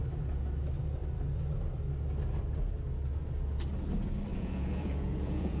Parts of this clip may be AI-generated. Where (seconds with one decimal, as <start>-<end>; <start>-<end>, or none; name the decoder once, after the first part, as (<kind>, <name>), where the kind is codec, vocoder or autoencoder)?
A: 4.3-5.6 (vocoder, Vocos)

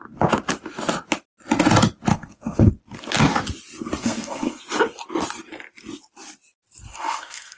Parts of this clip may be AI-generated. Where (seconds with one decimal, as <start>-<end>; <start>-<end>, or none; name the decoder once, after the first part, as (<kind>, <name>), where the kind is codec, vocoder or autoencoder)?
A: 2.1-2.7 (codec, SNAC); 4.0-4.6; 6.9-7.6

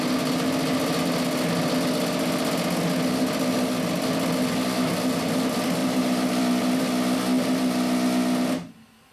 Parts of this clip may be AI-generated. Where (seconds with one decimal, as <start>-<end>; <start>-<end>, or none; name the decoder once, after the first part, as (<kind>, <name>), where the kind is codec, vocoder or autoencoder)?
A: 5.8-6.6 (vocoder, BigVGAN v2)

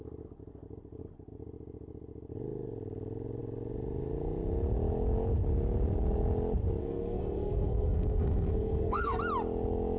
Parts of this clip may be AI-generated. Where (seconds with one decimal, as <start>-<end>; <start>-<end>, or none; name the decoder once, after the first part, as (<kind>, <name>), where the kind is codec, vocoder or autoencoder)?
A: 6.8-9.2 (codec, SNAC)

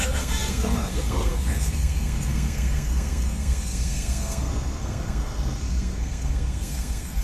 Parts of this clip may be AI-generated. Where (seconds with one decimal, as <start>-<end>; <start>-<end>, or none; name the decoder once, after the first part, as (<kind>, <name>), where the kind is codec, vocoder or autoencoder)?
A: 0.0-7.2 (codec, SNAC)